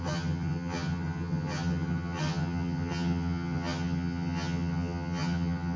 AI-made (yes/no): yes